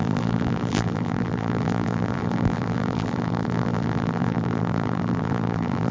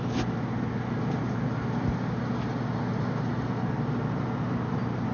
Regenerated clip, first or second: first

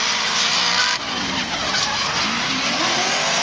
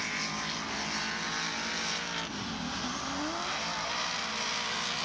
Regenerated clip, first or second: first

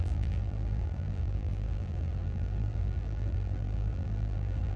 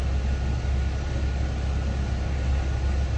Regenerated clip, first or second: first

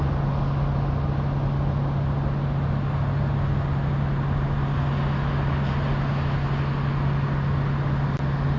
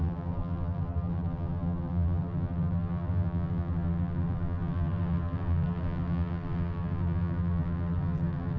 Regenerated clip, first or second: second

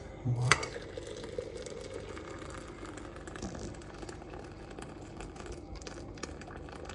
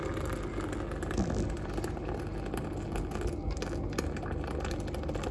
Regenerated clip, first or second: first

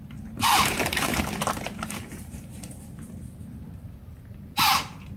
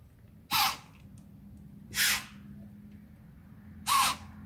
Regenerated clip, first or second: first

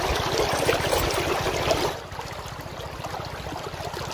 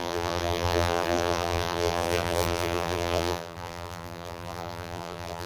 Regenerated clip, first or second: second